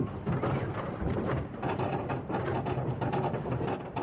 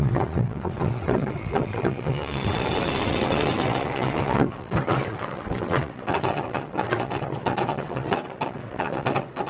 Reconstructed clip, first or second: second